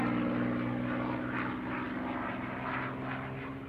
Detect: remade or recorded recorded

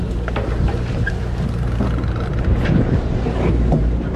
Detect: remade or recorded recorded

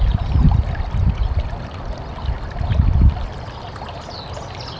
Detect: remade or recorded recorded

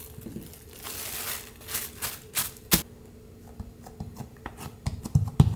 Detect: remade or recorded recorded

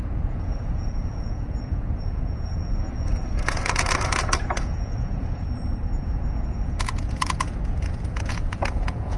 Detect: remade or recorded remade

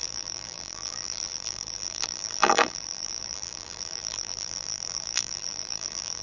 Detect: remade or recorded remade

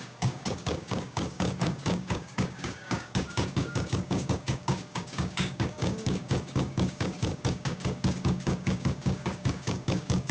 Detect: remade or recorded remade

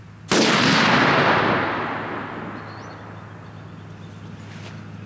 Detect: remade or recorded recorded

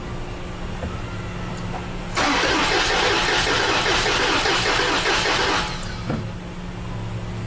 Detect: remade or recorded recorded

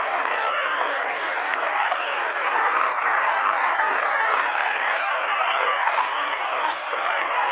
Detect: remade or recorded remade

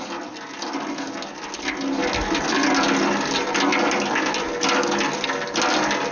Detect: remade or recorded recorded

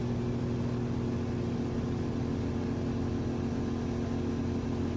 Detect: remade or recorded recorded